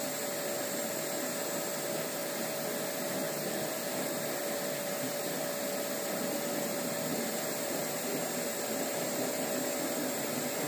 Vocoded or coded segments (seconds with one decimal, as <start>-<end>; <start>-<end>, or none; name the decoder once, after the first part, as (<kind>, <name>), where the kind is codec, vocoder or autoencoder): 7.1-7.9 (vocoder, BigVGAN v2)